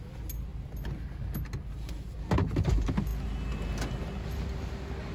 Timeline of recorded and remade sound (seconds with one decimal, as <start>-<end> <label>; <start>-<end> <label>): 0.0-5.1 recorded